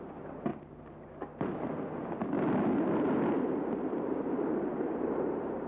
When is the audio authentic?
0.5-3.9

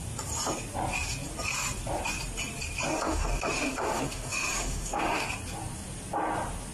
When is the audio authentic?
0.0-2.9; 5.3-6.7

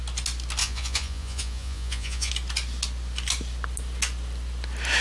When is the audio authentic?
0.0-0.6; 2.3-5.0

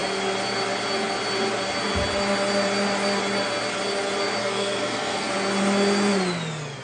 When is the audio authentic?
0.0-4.4; 5.3-6.8

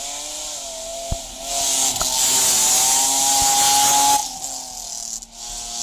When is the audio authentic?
0.0-5.8

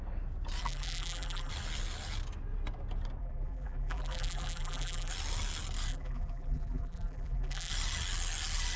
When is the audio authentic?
0.0-0.6; 1.5-3.2; 5.1-5.9; 7.7-8.8